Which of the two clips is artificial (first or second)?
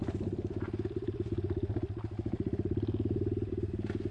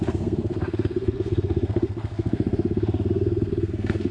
second